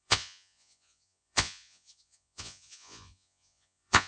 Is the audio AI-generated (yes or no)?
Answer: yes